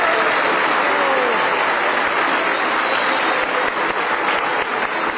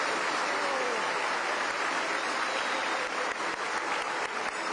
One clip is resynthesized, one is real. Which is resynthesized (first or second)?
second